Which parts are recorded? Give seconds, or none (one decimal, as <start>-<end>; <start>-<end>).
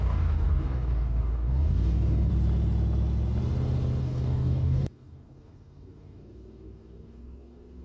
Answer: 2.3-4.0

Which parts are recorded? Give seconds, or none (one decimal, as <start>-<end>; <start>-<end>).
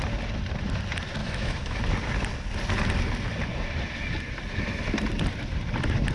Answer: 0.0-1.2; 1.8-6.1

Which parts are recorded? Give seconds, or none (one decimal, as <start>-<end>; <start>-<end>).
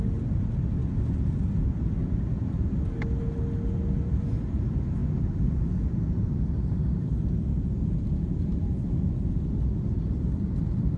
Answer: 0.0-11.0